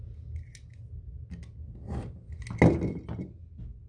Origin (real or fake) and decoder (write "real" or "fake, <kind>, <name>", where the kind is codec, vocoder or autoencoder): real